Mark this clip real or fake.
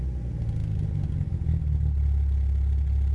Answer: real